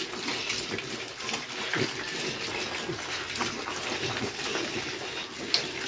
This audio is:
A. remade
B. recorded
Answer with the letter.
B